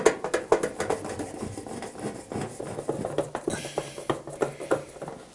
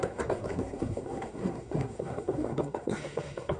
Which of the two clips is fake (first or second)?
second